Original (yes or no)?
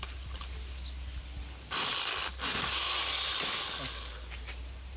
yes